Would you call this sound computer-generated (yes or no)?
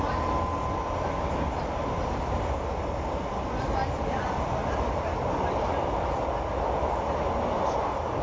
no